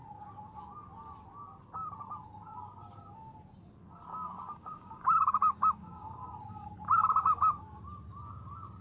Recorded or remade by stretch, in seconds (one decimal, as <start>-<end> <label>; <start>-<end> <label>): 0.0-4.1 recorded; 4.1-7.8 remade; 7.8-8.8 recorded